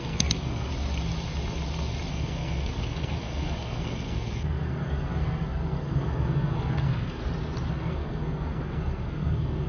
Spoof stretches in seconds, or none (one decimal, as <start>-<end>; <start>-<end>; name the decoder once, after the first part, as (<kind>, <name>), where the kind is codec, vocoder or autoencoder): 0.0-0.7 (codec, SNAC); 2.1-7.2; 7.7-9.7